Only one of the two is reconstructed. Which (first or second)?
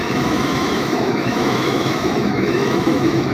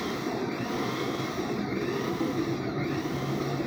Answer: first